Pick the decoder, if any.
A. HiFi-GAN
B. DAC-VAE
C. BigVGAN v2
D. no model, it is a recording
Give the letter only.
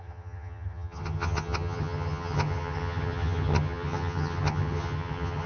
A